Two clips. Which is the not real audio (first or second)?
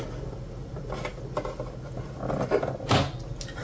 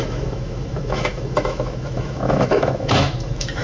second